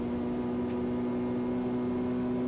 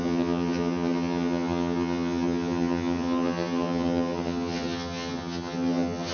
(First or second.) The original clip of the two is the first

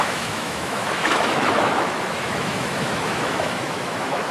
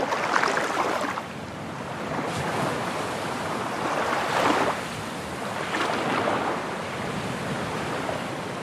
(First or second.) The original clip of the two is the second